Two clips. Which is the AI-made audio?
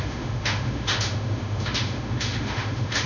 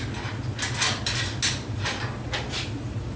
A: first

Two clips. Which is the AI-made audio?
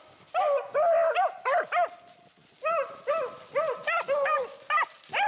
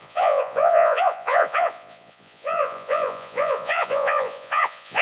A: second